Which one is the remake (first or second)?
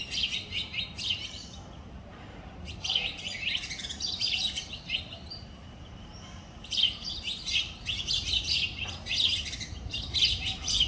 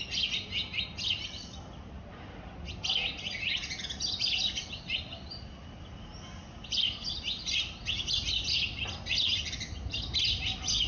first